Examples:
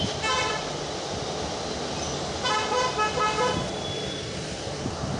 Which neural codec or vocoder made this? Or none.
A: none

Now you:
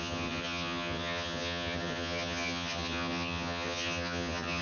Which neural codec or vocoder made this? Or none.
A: vocoder, HiFi-GAN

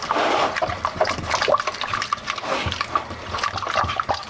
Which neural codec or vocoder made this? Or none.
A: vocoder, BigVGAN v2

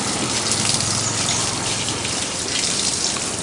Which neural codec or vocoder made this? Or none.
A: none